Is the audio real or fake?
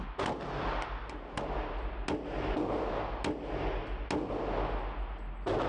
real